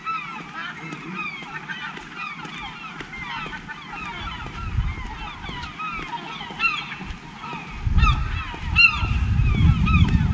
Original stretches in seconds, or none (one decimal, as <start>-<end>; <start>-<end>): 0.0-10.3